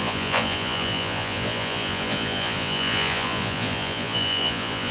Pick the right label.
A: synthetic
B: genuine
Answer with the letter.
A